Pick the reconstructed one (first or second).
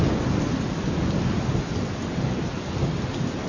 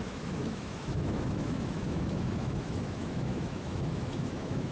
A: second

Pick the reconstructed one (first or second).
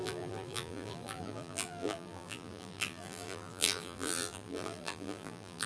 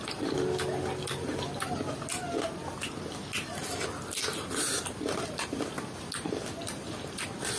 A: first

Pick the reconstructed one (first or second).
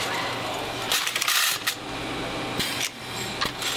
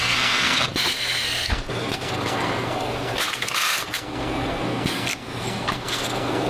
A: second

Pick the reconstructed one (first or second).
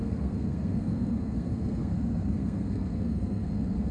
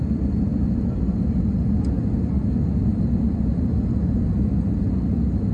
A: first